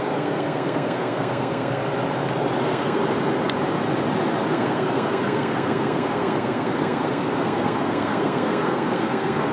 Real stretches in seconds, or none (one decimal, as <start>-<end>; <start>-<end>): 1.8-2.6; 3.0-4.5